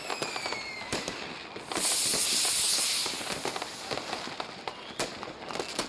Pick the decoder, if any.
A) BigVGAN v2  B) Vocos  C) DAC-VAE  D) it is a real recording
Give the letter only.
A